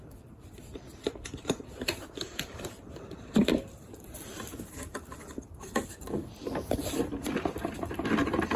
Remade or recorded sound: remade